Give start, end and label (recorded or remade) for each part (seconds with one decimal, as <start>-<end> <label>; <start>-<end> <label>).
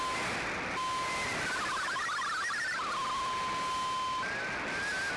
0.0-5.2 recorded